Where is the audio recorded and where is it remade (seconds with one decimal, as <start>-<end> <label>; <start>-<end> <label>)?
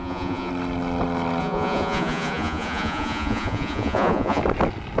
0.0-0.5 remade; 0.5-1.4 recorded; 1.4-4.4 remade; 4.4-5.0 recorded